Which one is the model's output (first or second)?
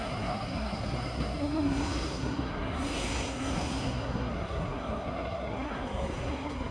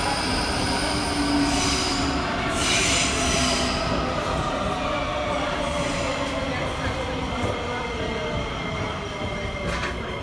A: first